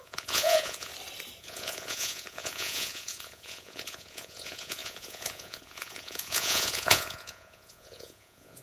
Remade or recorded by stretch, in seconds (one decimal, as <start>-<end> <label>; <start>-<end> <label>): 0.0-0.9 remade; 0.9-1.4 recorded; 1.4-8.6 remade